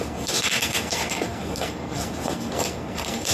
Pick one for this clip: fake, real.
fake